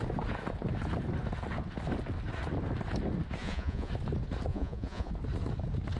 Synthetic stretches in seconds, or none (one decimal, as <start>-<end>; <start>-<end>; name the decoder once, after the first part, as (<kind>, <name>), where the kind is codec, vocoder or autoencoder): 3.4-3.9 (vocoder, Vocos); 4.5-5.1